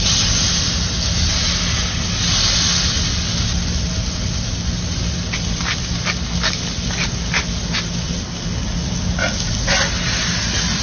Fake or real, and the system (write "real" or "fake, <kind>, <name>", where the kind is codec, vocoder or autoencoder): real